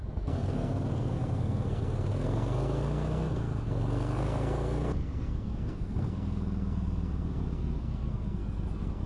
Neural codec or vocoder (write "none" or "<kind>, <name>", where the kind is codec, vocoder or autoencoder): codec, SNAC